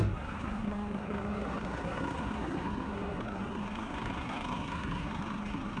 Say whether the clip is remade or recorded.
remade